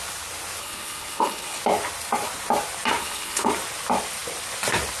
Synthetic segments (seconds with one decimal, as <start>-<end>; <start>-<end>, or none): 0.6-1.6; 3.0-3.5